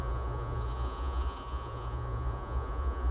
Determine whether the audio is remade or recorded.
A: remade